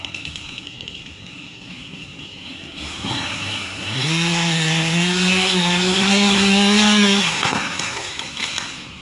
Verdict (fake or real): fake